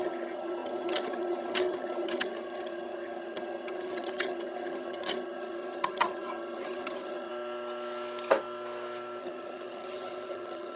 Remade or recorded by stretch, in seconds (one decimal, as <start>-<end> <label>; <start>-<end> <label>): 0.0-7.3 remade; 7.3-9.2 recorded; 9.2-10.8 remade